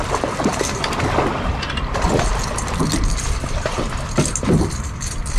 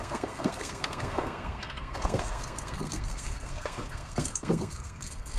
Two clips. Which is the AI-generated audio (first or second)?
second